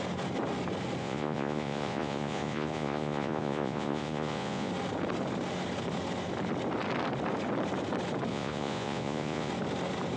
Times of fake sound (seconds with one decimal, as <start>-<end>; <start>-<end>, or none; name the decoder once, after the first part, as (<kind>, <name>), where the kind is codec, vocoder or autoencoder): 1.0-4.7 (vocoder, Vocos); 8.3-9.5